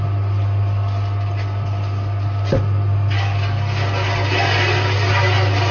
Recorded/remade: recorded